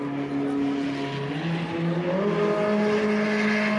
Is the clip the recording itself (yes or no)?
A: yes